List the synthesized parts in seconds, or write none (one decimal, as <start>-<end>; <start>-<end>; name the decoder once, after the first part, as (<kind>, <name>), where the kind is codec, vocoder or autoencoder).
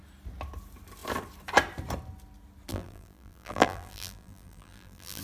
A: 2.7-5.2 (vocoder, BigVGAN v2)